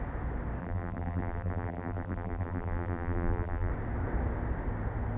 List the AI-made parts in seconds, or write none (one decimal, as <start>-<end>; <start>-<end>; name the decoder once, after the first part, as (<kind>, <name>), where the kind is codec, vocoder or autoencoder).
0.6-3.7 (vocoder, BigVGAN v2)